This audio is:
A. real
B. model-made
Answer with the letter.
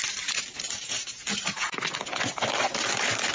A